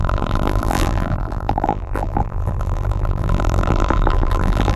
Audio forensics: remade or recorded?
remade